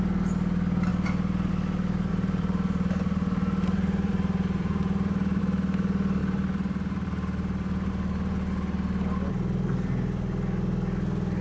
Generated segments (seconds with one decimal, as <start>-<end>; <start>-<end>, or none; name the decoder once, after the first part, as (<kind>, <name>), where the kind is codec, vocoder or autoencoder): 2.1-5.4 (vocoder, BigVGAN v2); 6.2-7.9